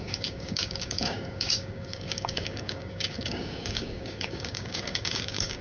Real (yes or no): no